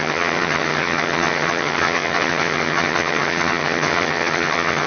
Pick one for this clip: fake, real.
fake